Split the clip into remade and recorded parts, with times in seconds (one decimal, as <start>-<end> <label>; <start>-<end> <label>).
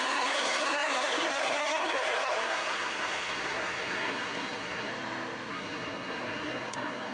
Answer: 0.0-4.9 remade; 4.9-5.5 recorded; 5.5-7.1 remade